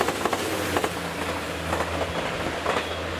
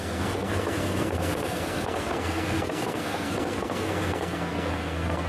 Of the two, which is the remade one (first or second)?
second